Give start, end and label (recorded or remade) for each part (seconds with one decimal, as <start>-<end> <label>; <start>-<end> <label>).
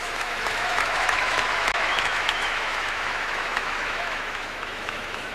0.0-5.3 remade